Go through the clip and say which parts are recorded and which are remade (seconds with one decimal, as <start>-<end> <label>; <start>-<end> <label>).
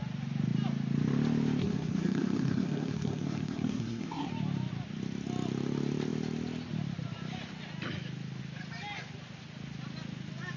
0.0-1.6 recorded; 1.6-4.3 remade; 4.3-10.6 recorded